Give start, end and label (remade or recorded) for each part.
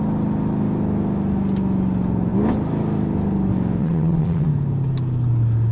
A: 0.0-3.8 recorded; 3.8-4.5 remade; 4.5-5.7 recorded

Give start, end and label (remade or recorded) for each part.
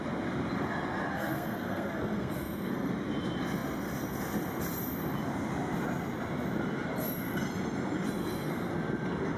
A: 0.0-1.1 recorded; 1.1-2.9 remade; 2.9-8.2 recorded; 8.2-8.7 remade; 8.7-9.4 recorded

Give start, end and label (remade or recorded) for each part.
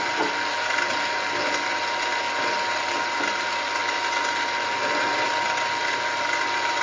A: 0.0-6.8 recorded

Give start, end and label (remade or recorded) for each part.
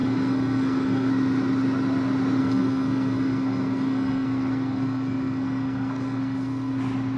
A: 0.0-1.1 remade; 1.1-2.4 recorded; 2.4-6.7 remade; 6.7-7.2 recorded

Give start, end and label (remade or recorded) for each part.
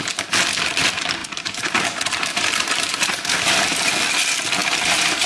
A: 0.0-1.2 recorded; 1.2-3.9 remade; 3.9-4.6 recorded; 4.6-5.3 remade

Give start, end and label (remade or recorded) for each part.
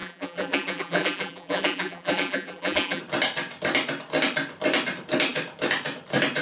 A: 0.0-3.0 remade; 3.0-6.4 recorded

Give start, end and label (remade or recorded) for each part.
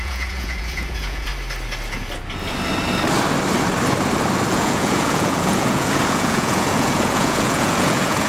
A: 0.0-1.3 remade; 1.3-4.5 recorded; 4.5-8.3 remade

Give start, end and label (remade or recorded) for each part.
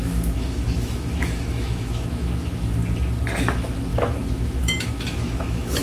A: 0.0-2.8 remade; 2.8-3.4 recorded; 3.4-5.8 remade